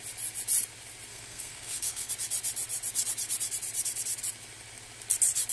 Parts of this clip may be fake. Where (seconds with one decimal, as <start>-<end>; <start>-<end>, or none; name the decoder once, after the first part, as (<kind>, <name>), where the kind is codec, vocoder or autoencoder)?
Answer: 1.1-2.1 (codec, SNAC)